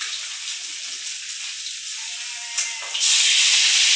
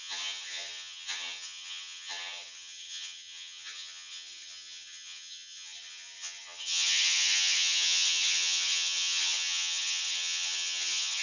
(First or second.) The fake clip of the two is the second